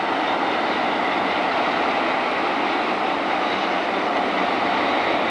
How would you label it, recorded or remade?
recorded